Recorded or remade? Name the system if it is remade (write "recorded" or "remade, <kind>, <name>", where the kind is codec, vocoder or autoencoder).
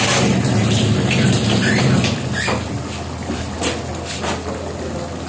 recorded